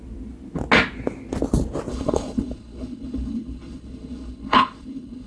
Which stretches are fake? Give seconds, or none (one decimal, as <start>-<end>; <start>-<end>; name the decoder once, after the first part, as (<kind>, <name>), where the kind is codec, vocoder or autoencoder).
1.9-5.3 (codec, HILCodec)